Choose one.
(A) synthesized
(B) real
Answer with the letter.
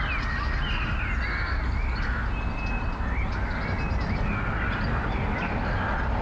B